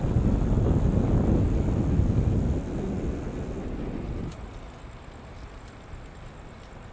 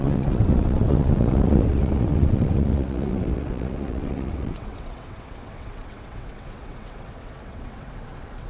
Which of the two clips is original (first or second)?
first